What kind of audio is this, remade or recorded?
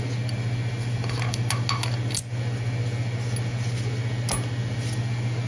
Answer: recorded